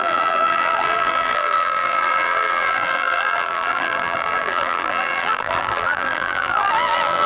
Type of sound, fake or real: fake